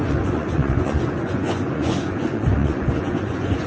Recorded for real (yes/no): no